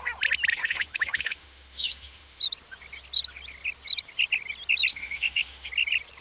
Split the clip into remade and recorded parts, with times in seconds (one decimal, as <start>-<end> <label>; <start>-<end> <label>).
0.0-0.5 recorded; 0.5-2.4 remade; 2.4-4.9 recorded; 4.9-5.7 remade; 5.7-6.2 recorded